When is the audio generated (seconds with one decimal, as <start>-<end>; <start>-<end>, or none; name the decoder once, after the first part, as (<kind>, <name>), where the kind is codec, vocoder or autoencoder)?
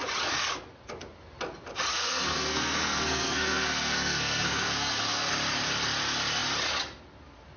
1.9-5.3 (codec, SNAC)